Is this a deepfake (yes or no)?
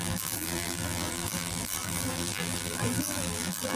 yes